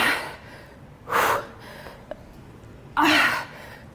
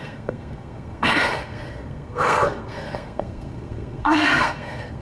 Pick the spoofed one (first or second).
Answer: second